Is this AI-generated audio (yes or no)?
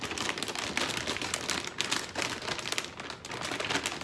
no